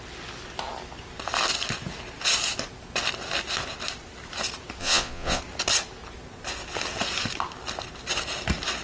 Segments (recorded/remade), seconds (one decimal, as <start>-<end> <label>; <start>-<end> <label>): 0.0-4.8 recorded; 4.8-5.4 remade; 5.4-8.8 recorded